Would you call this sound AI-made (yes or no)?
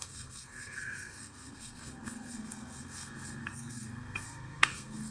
yes